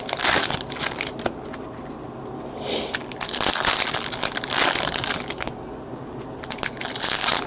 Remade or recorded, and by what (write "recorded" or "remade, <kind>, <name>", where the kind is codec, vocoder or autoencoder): recorded